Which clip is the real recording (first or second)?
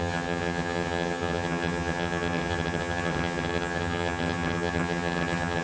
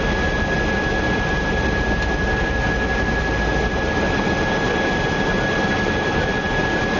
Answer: second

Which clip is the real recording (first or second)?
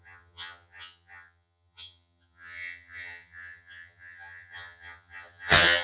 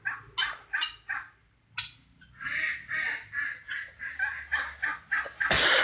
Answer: second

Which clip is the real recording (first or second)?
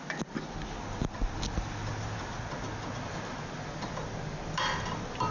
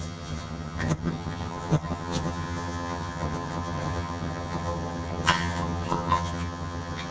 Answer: first